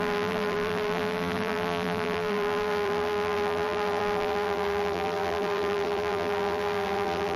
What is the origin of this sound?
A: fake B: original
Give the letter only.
A